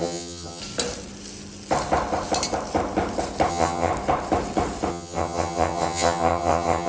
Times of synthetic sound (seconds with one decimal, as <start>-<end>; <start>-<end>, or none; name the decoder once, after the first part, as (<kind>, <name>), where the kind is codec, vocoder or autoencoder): 0.0-0.6 (vocoder, HiFi-GAN); 3.5-3.9; 4.9-6.9